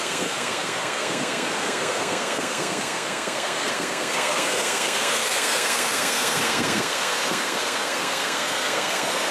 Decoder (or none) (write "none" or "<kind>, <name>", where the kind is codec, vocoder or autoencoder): codec, SNAC